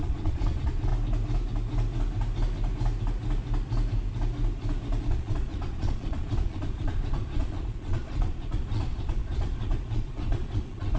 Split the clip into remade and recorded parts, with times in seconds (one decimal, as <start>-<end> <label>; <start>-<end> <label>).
0.0-0.9 remade; 0.9-5.0 recorded; 5.0-11.0 remade